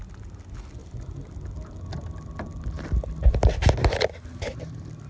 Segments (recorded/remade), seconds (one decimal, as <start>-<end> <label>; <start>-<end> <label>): 0.0-5.1 recorded